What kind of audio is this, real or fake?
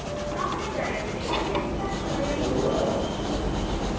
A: real